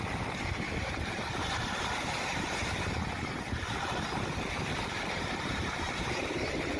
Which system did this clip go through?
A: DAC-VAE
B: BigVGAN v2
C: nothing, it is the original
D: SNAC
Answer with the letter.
B